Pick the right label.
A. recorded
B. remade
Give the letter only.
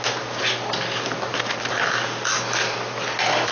A